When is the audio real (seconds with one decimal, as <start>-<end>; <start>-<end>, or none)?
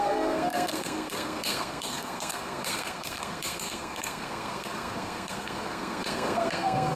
none